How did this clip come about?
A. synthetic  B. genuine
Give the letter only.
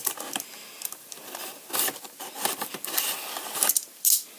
B